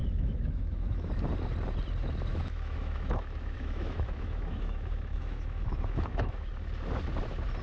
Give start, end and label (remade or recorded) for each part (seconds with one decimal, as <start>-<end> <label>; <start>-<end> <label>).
0.0-1.1 remade; 1.1-2.3 recorded; 2.3-6.5 remade; 6.5-7.6 recorded